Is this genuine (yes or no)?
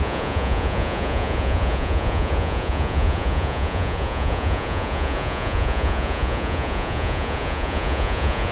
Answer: no